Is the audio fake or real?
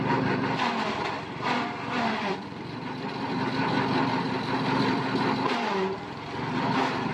fake